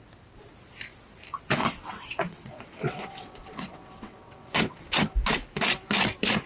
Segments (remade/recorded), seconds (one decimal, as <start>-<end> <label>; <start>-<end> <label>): 0.0-1.6 recorded; 1.6-5.1 remade; 5.1-6.5 recorded